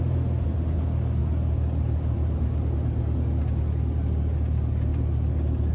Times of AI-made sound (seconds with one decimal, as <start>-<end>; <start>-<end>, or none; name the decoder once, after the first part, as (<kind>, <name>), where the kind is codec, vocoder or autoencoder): none